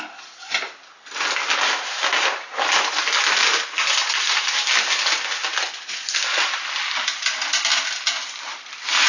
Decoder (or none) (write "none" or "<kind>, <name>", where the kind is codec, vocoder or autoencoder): none